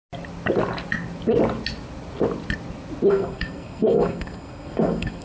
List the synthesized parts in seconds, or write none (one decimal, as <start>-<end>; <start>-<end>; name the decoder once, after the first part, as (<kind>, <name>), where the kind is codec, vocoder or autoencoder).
3.1-5.2 (codec, SNAC)